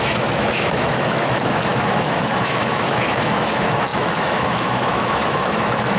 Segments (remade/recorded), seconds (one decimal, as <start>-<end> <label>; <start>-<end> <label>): 0.0-6.0 remade